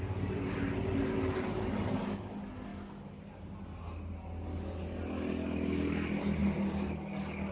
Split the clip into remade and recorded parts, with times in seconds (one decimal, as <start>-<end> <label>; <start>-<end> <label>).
0.0-7.5 recorded